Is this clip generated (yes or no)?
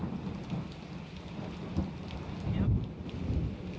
yes